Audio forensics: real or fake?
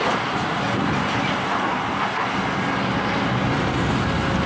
real